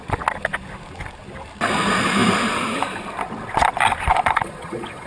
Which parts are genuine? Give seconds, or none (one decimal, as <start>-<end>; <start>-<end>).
0.0-4.1